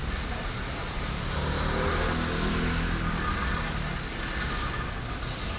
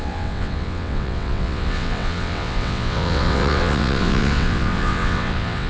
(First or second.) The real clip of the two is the first